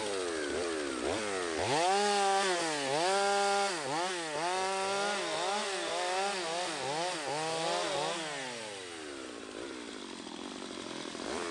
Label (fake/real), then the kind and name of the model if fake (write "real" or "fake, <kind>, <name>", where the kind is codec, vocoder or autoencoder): real